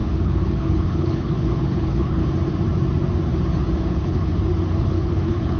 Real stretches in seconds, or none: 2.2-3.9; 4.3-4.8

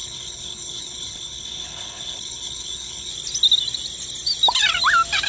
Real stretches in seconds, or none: 3.1-5.3

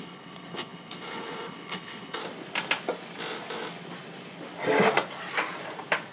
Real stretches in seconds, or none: 2.2-6.1